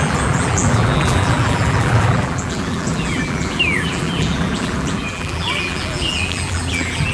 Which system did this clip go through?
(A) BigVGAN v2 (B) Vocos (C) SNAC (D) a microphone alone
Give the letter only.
A